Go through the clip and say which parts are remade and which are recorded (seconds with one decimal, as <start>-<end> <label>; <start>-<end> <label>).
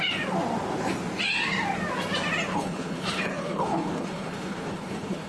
0.0-2.5 recorded; 2.5-5.3 remade